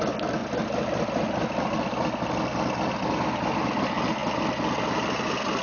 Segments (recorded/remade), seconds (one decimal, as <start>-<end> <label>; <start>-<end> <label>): 0.0-5.6 recorded